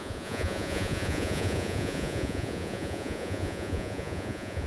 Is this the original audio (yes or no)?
no